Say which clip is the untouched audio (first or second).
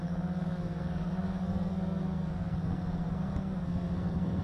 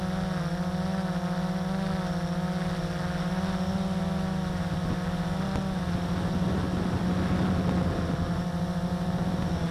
second